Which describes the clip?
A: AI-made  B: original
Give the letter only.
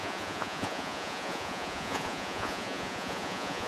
A